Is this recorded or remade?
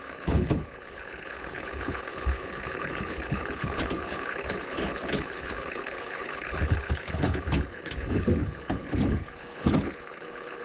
remade